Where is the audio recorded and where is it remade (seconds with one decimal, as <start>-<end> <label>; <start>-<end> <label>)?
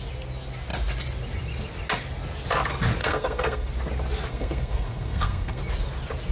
0.0-3.0 recorded; 3.0-3.7 remade; 3.7-4.3 recorded; 4.3-5.6 remade; 5.6-6.3 recorded